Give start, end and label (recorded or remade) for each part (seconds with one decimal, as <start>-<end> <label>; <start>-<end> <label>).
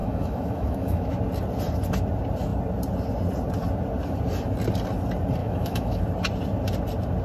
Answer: 0.0-1.2 remade; 1.2-5.4 recorded; 5.4-6.0 remade; 6.0-7.2 recorded